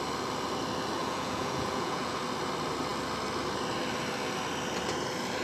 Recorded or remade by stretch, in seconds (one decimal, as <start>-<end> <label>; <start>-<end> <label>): 0.0-1.0 recorded; 1.0-2.2 remade; 2.2-5.4 recorded